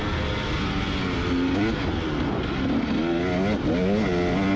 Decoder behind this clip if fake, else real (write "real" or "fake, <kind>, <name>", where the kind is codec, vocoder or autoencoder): real